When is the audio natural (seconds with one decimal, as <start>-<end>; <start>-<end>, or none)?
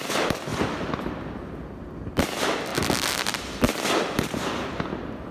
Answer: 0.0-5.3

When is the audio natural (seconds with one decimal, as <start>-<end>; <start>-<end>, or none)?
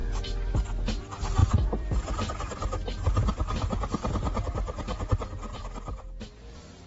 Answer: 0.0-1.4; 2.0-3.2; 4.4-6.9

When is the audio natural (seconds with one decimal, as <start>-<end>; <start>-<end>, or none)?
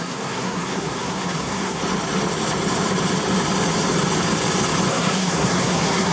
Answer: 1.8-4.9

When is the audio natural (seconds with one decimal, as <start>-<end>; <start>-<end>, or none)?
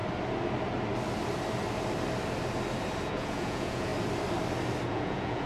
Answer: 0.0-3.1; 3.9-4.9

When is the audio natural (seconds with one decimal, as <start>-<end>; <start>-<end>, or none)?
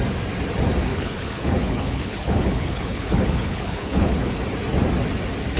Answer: 0.0-0.9; 4.3-5.6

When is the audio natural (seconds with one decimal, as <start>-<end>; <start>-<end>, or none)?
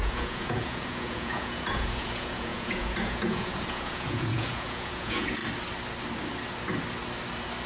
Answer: 5.4-7.7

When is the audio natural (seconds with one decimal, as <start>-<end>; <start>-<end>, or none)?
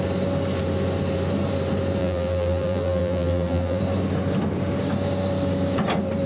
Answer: 0.0-2.0; 3.8-6.3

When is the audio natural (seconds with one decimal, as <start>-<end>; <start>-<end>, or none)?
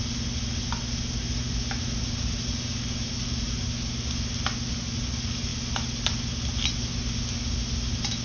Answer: 0.0-8.2